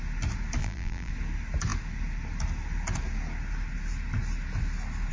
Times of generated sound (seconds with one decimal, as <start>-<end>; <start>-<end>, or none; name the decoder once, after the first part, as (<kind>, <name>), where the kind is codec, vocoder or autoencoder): 0.6-1.1 (vocoder, BigVGAN v2)